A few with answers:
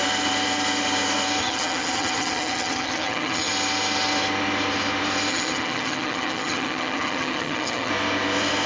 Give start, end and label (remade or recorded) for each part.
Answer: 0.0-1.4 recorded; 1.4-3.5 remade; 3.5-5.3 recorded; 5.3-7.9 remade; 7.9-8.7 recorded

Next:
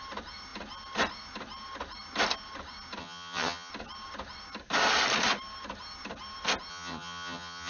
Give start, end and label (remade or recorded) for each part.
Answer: 0.0-3.0 recorded; 3.0-3.7 remade; 3.7-6.7 recorded; 6.7-7.7 remade

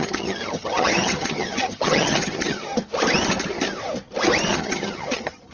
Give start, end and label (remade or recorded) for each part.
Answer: 0.0-2.8 remade; 2.8-4.5 recorded; 4.5-5.5 remade

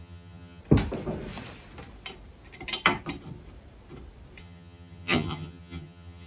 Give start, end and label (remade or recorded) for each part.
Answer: 0.0-0.6 remade; 0.6-4.4 recorded; 4.4-6.3 remade